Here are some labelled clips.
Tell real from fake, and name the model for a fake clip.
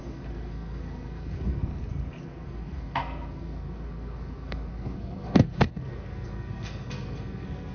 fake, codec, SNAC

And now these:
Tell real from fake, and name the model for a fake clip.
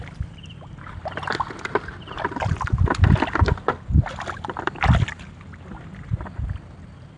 real